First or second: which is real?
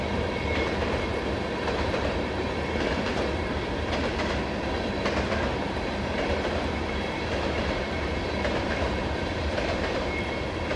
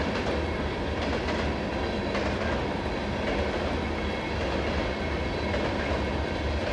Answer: second